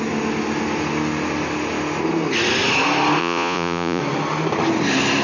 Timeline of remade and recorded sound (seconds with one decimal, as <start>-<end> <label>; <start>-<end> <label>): 0.0-3.2 recorded; 3.2-4.0 remade; 4.0-5.2 recorded